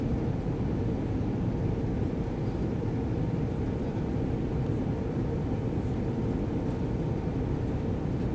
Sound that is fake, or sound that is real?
real